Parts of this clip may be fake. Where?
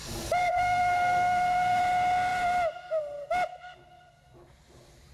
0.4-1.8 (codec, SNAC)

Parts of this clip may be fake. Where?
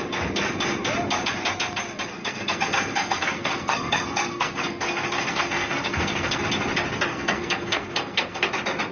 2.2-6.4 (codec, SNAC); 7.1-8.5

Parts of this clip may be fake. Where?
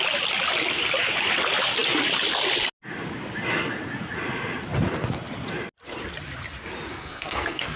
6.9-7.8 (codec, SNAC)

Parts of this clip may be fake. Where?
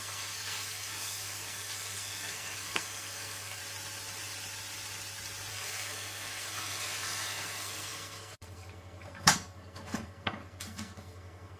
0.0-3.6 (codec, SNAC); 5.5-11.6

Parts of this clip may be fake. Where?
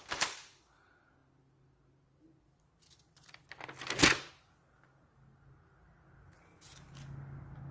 none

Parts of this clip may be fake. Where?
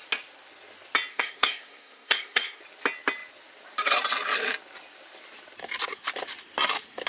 1.1-2.6 (codec, SNAC)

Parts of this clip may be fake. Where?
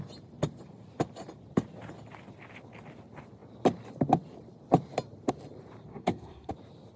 5.9-6.5 (codec, SNAC)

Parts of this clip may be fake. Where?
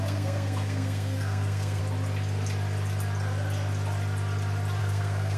0.0-1.8 (codec, SNAC); 4.8-5.4